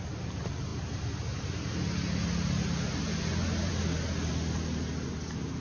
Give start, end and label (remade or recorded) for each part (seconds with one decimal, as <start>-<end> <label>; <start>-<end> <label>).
0.0-5.6 recorded